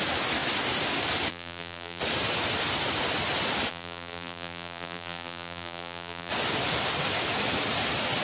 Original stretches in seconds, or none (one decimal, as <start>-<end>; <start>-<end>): 0.0-1.3; 2.0-3.7; 6.3-8.2